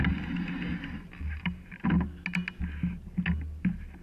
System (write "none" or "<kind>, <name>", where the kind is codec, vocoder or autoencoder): none